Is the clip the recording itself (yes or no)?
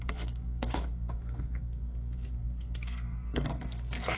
no